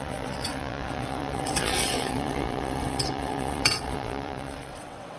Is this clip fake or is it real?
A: fake